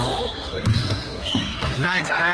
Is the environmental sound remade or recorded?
remade